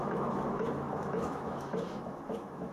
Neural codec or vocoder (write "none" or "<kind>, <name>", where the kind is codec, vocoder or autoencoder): autoencoder, DAC-VAE